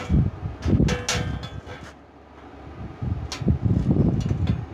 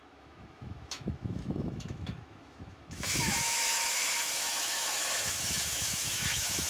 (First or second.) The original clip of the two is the first